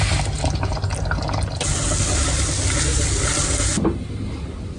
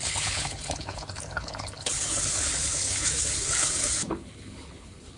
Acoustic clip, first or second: first